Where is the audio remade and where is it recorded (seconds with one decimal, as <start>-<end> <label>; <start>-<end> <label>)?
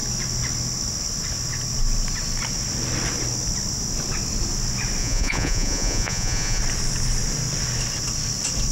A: 0.0-5.0 recorded; 5.0-6.6 remade; 6.6-8.7 recorded